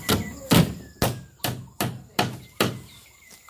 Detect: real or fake real